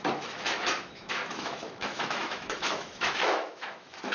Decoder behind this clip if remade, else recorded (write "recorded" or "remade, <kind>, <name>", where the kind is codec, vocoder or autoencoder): remade, autoencoder, DAC-VAE